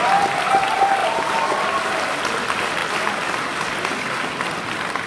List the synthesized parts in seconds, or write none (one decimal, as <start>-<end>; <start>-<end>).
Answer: none